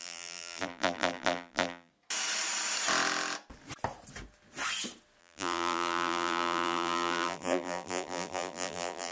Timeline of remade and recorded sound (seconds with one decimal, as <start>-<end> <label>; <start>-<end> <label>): 0.0-1.9 remade; 1.9-5.2 recorded; 5.2-9.1 remade